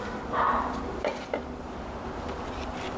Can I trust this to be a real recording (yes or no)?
no